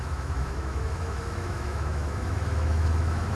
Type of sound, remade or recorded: remade